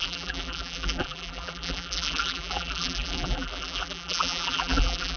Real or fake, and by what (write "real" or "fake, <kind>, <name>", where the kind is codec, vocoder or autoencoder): fake, vocoder, BigVGAN v2